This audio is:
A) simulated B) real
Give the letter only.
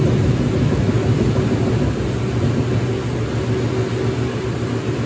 B